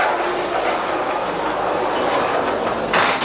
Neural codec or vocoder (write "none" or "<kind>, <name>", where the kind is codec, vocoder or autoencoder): none